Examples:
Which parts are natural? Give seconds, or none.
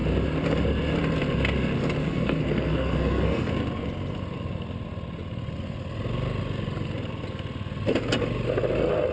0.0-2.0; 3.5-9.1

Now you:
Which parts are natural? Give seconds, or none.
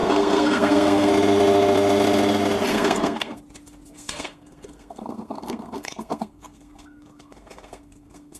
1.1-2.7; 3.4-3.9